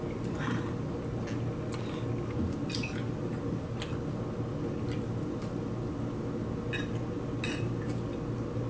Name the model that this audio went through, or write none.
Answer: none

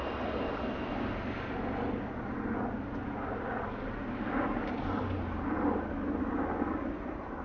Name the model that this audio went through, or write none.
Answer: none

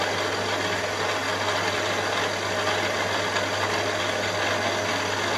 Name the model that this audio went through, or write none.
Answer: none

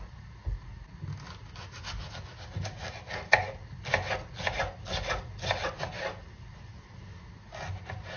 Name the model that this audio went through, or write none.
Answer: none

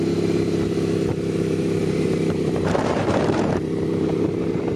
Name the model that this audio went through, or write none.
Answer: vocoder, BigVGAN v2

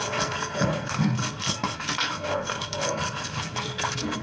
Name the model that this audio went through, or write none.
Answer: codec, SNAC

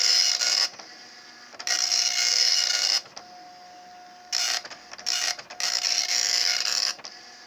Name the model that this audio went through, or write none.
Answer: none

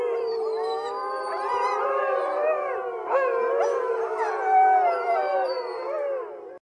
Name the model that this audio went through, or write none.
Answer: vocoder, BigVGAN v2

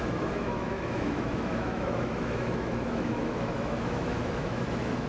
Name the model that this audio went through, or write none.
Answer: autoencoder, DAC-VAE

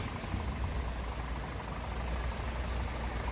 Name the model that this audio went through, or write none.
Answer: none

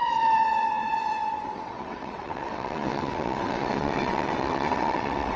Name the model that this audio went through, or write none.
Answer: vocoder, WaveNeXt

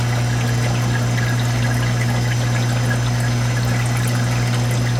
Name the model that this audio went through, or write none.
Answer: none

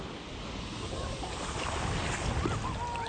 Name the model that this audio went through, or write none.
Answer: none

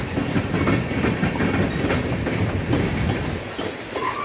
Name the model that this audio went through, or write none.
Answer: none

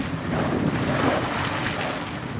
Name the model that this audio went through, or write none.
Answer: none